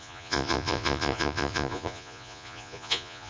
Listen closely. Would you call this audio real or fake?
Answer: fake